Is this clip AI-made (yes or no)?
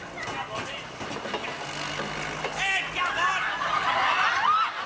no